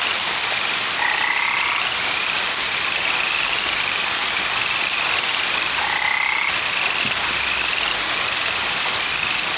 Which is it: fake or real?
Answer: real